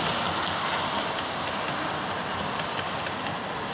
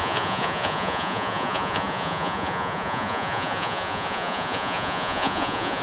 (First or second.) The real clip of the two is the first